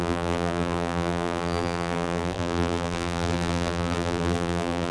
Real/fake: fake